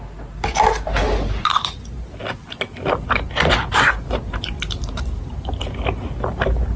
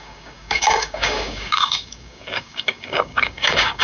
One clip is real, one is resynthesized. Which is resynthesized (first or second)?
second